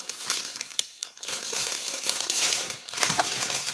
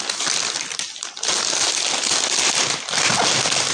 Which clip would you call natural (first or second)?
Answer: second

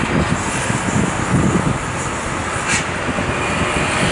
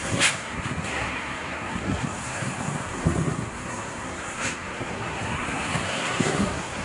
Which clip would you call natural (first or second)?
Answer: first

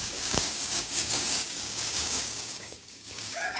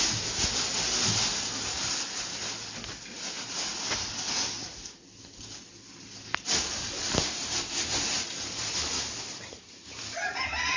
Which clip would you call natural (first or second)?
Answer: second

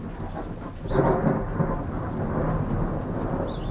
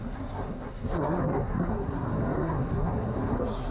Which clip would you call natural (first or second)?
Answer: first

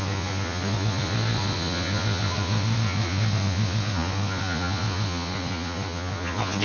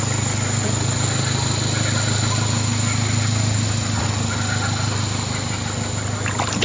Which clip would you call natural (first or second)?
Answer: second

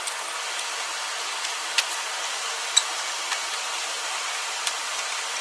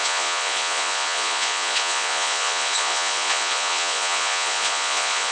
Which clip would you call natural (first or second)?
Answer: first